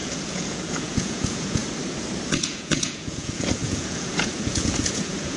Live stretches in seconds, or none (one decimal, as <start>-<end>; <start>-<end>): 1.6-2.3